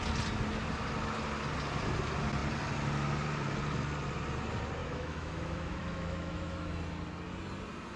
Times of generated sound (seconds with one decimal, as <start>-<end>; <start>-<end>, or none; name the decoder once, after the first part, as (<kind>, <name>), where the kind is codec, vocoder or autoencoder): 4.8-6.8 (autoencoder, DAC-VAE)